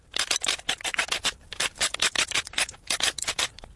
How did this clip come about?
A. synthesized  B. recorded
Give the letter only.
A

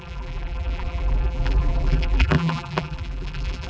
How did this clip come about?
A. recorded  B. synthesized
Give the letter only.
B